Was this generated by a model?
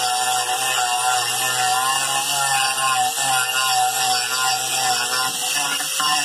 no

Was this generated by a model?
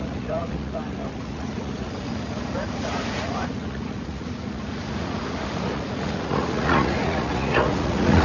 yes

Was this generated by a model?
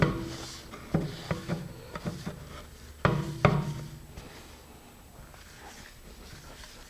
no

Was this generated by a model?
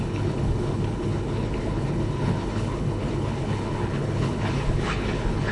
yes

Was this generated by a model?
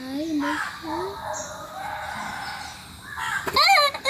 no